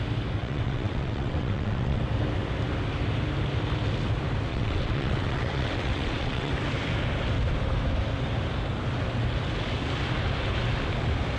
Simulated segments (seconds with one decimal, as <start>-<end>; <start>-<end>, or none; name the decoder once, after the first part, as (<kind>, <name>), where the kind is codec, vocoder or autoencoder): 0.4-2.0 (vocoder, WaveNeXt); 4.5-6.5